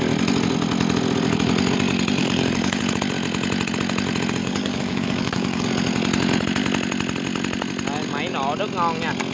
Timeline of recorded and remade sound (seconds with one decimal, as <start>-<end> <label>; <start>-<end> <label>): 0.0-2.2 recorded; 2.2-2.8 remade; 2.8-4.4 recorded; 4.4-5.7 remade; 5.7-9.3 recorded